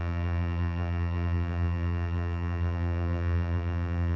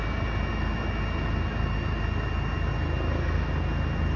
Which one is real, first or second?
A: second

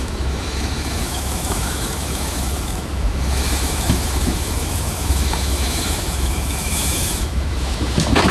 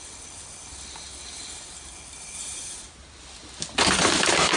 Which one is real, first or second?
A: second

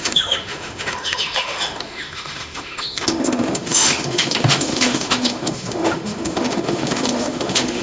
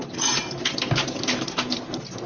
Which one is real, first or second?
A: second